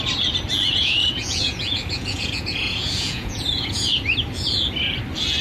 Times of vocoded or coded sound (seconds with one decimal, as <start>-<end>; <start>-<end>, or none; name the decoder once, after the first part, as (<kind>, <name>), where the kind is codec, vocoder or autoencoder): 0.7-3.9 (vocoder, Vocos)